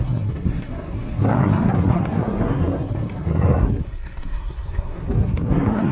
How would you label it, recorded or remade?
remade